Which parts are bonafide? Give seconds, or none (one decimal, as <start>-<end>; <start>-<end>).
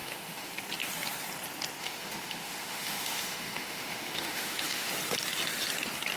0.5-1.8; 4.9-6.2